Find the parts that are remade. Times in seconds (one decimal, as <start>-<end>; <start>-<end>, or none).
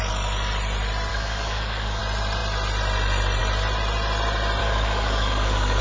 1.1-2.0; 4.6-5.8